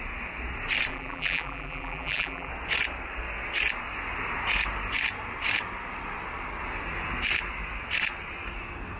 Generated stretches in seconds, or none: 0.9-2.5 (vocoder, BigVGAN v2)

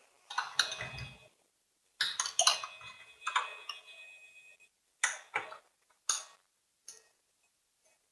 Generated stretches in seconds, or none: none

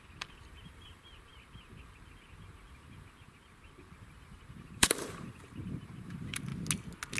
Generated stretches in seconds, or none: 0.0-6.5 (vocoder, BigVGAN v2)

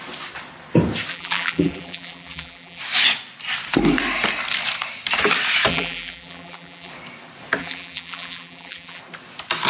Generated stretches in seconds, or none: 1.1-2.8 (vocoder, BigVGAN v2); 5.7-6.9; 7.6-9.0

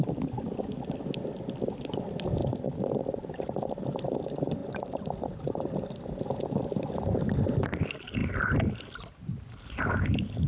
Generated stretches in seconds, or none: 2.4-3.7 (vocoder, BigVGAN v2); 4.6-6.9

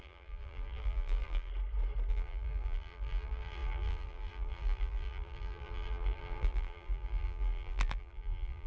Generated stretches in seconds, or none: 0.0-1.5 (vocoder, BigVGAN v2); 2.1-8.7